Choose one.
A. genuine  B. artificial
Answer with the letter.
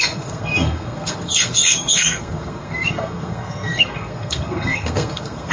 B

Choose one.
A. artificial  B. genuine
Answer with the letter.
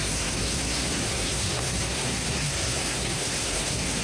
A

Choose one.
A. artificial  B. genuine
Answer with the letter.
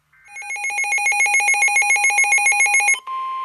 B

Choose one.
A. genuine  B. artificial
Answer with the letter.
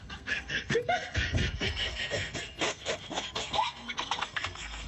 B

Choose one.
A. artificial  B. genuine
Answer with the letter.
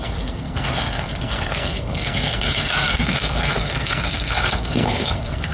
A